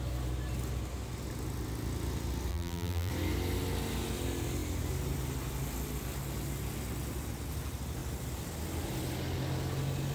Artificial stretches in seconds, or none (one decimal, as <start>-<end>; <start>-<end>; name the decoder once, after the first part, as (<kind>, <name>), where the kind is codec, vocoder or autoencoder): 2.5-3.1 (vocoder, BigVGAN v2)

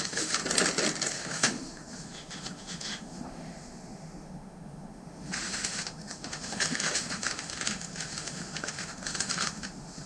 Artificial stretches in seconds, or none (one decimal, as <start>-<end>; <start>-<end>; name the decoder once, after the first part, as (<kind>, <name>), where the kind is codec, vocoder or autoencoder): 0.0-0.4 (autoencoder, DAC-VAE); 1.1-10.1

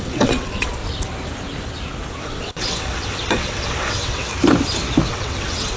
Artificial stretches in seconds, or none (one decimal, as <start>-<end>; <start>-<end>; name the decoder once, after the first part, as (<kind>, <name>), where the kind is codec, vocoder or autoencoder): 0.0-0.8 (vocoder, WaveNeXt); 2.1-4.3; 5.1-5.8

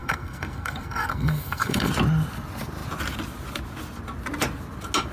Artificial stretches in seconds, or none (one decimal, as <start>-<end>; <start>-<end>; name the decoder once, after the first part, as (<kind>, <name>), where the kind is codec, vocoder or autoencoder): 0.0-1.9 (codec, SNAC)

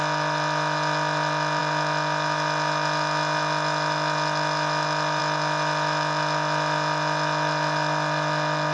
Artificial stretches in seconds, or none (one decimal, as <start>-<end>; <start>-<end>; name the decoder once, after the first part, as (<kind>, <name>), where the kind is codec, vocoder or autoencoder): none

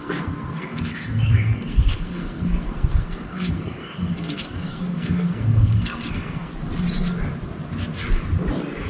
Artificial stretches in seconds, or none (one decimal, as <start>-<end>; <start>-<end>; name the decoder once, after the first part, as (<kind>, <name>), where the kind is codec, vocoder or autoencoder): 0.0-6.5 (codec, SNAC)

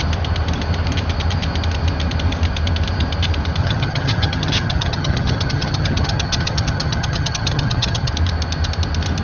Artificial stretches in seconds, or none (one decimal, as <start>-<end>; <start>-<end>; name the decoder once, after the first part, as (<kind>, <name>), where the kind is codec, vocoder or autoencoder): 3.6-8.1 (vocoder, HiFi-GAN)

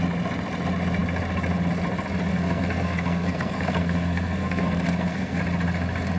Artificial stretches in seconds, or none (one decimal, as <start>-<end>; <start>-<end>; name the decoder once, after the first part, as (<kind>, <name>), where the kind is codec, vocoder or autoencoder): 2.3-5.4 (codec, SNAC)